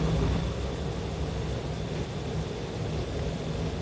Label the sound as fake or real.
real